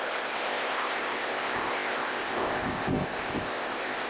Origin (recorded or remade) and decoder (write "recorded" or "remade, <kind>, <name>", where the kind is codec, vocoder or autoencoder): remade, codec, ZipCodec